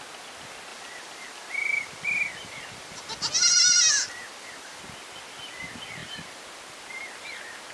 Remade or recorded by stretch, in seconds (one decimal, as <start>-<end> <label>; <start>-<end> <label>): 0.0-0.7 recorded; 0.7-4.8 remade; 4.8-7.7 recorded